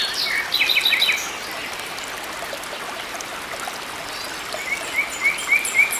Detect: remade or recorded recorded